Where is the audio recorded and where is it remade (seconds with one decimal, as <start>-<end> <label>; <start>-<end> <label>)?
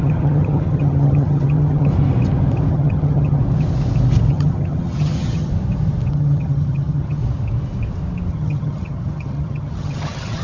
0.0-1.9 remade; 1.9-2.7 recorded; 2.7-3.4 remade; 3.4-4.3 recorded; 4.3-5.5 remade; 5.5-6.1 recorded; 6.1-7.2 remade; 7.2-8.3 recorded; 8.3-10.4 remade